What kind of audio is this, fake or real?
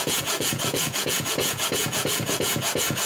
fake